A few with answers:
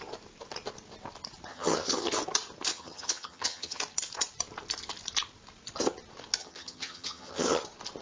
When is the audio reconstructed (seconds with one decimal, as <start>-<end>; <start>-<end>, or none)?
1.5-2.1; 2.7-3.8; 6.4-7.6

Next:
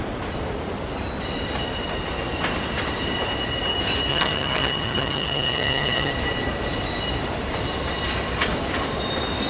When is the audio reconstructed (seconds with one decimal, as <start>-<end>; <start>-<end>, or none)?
4.1-6.1

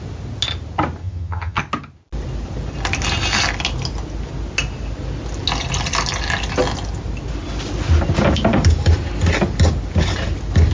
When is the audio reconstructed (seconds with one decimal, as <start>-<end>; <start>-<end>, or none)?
1.0-1.6

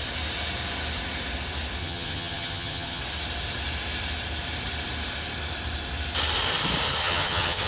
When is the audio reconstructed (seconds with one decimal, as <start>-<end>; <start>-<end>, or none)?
1.8-3.0; 7.0-7.7